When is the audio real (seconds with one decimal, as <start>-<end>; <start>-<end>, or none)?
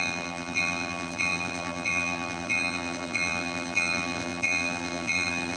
none